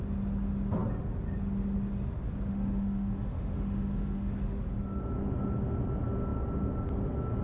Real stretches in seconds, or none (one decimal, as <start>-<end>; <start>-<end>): 0.0-2.5; 4.3-7.4